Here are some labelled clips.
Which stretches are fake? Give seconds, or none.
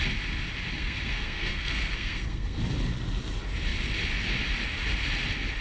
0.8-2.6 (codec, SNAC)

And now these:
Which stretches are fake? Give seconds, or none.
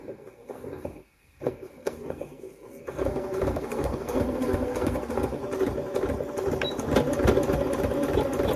0.0-5.4 (codec, SNAC)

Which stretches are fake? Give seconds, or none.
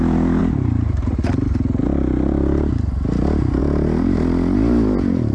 none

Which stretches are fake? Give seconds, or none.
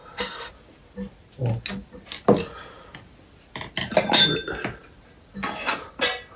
0.0-0.5 (codec, SNAC)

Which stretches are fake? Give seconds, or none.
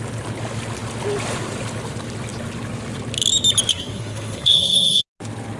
3.7-5.0 (codec, SNAC)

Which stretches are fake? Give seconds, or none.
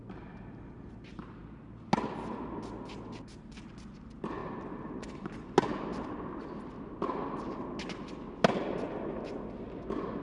none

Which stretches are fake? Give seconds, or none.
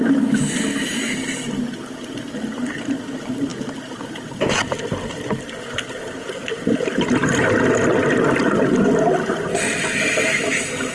none